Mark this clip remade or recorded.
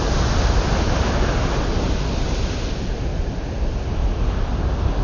recorded